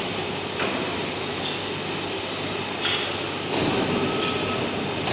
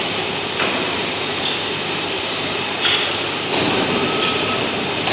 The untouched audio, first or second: first